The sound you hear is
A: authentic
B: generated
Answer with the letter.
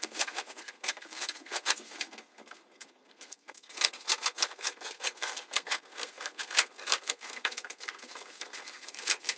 B